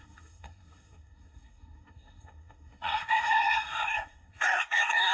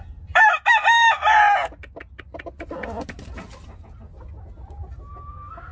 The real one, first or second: second